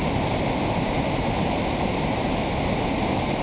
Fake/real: real